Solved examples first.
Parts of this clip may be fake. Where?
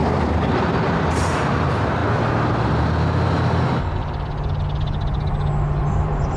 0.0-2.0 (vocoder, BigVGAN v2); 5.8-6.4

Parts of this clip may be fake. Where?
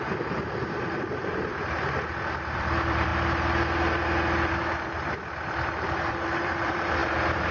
0.0-3.1 (vocoder, BigVGAN v2); 4.5-7.5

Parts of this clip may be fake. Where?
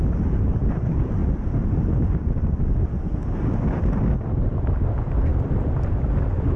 1.2-2.6 (vocoder, BigVGAN v2); 5.3-6.6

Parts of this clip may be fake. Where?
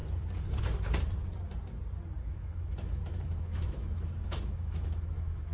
2.2-5.5 (autoencoder, DAC-VAE)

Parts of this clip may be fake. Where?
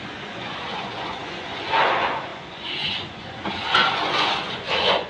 0.0-5.1 (vocoder, Vocos)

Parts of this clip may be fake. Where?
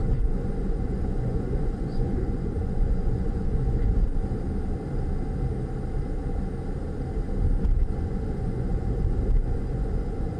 0.0-4.1 (vocoder, Vocos); 7.6-10.4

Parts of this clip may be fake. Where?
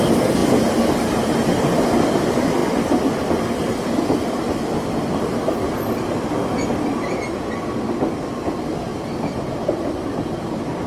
2.6-5.2 (vocoder, BigVGAN v2)